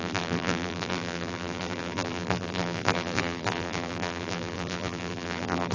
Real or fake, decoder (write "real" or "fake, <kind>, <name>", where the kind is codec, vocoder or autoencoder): fake, vocoder, BigVGAN v2